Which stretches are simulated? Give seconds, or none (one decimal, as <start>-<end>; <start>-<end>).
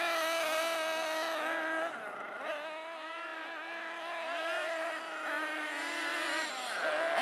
6.1-6.7